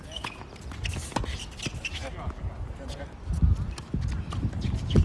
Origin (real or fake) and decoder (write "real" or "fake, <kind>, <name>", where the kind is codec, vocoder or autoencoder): real